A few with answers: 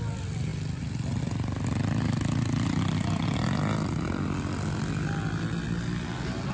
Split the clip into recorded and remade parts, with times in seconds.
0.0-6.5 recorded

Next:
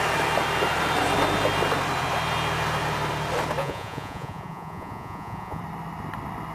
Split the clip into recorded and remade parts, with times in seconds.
0.0-3.6 recorded; 3.6-5.6 remade; 5.6-6.5 recorded

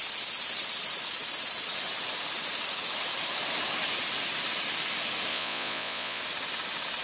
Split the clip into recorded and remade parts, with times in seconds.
0.0-5.3 recorded; 5.3-6.2 remade; 6.2-7.0 recorded

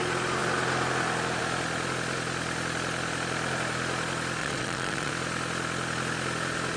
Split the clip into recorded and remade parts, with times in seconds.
0.0-4.4 recorded; 4.4-5.1 remade; 5.1-6.8 recorded